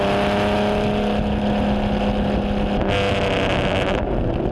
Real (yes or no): yes